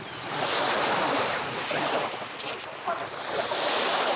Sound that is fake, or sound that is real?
real